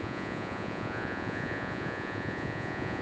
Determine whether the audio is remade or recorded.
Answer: remade